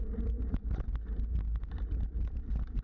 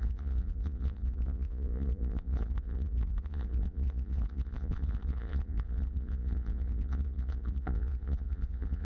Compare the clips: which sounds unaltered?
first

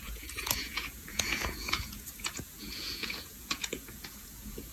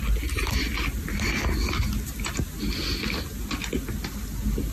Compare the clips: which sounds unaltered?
second